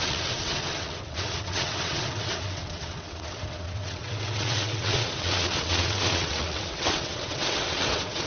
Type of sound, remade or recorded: remade